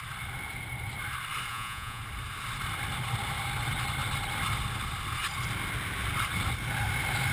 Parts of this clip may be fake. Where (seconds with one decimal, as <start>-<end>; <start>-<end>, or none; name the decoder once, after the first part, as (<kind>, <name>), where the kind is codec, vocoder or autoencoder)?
1.5-2.0 (vocoder, Vocos)